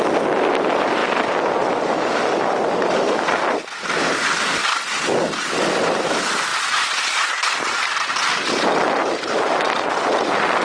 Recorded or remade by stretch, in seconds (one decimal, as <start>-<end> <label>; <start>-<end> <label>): 0.0-1.0 recorded; 1.0-4.0 remade; 4.0-10.6 recorded